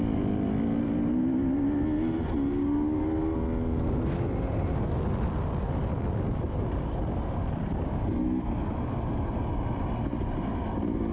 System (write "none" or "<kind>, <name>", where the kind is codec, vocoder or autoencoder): none